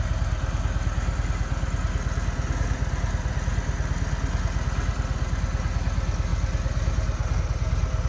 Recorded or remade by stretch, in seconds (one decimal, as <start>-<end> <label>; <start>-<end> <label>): 0.0-8.1 recorded